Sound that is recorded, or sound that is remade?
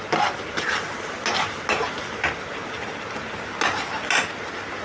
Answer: recorded